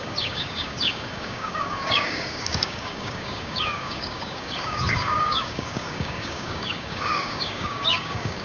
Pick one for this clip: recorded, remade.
remade